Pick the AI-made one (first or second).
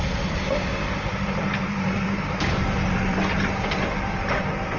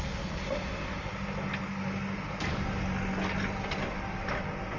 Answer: first